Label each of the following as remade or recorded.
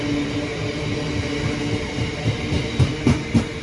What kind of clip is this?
recorded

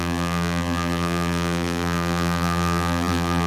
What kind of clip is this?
remade